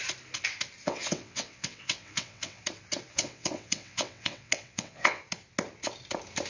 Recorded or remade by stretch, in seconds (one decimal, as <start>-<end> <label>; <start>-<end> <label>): 0.0-0.8 recorded; 0.8-2.6 remade; 2.6-3.1 recorded; 3.1-5.2 remade; 5.2-6.5 recorded